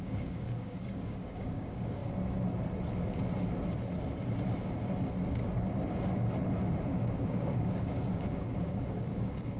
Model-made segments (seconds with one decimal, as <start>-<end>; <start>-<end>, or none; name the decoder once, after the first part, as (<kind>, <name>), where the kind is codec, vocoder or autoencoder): 0.0-2.0 (codec, DAC); 6.8-9.6